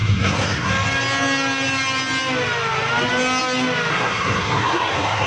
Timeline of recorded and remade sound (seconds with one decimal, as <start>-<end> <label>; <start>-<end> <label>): 0.0-0.7 remade; 0.7-3.9 recorded; 3.9-5.3 remade